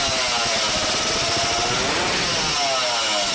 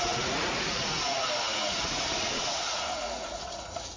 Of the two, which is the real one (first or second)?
first